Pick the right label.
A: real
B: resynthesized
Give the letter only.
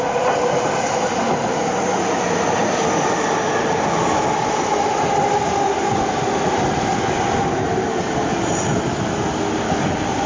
A